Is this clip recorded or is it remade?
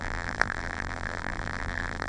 remade